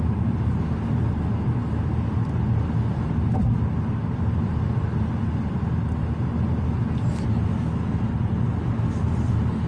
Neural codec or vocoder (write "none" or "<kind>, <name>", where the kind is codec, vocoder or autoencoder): none